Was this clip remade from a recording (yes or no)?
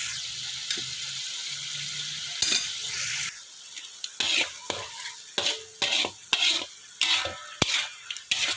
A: no